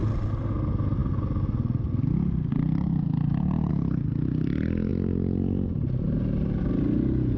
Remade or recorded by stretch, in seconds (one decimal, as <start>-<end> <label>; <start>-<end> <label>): 0.0-7.4 recorded